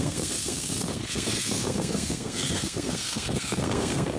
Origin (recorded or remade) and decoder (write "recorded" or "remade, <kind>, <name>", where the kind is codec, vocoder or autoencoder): remade, codec, SNAC